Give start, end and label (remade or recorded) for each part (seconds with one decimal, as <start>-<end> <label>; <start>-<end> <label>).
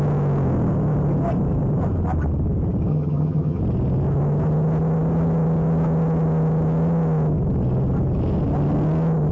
0.0-2.9 recorded; 2.9-3.6 remade; 3.6-9.3 recorded